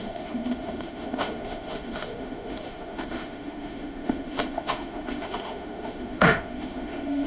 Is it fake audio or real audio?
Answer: fake